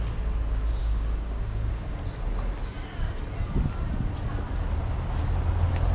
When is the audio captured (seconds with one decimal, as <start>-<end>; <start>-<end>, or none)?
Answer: 0.0-0.8; 1.7-5.9